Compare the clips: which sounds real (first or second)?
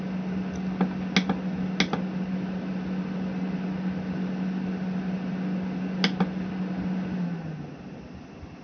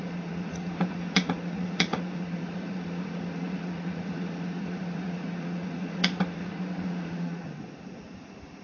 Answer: first